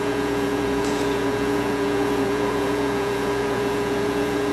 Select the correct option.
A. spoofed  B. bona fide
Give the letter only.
A